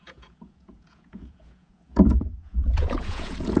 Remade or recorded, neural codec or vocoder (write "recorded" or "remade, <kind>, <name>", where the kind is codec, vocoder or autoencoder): remade, vocoder, Vocos